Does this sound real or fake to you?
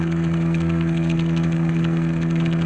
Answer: fake